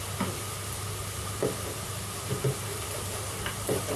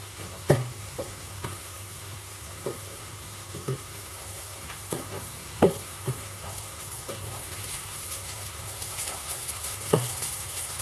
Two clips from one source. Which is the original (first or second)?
first